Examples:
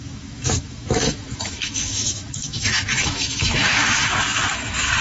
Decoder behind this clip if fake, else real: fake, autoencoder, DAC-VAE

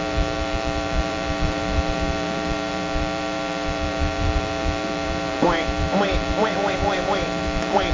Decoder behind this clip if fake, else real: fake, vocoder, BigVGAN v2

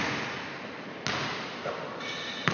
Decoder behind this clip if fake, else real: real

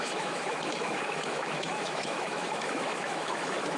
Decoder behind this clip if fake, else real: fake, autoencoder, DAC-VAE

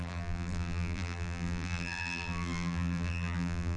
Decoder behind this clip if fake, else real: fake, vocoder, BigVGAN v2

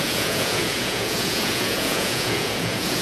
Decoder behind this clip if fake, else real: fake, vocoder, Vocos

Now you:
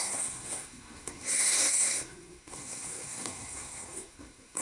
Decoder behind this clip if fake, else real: fake, codec, SNAC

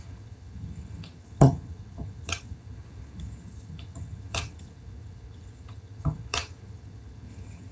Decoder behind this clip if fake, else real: fake, vocoder, HiFi-GAN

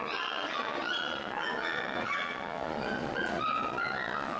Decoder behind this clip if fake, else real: fake, vocoder, Vocos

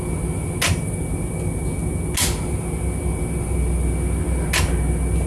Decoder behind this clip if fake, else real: real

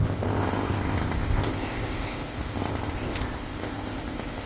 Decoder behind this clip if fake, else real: fake, codec, ZipCodec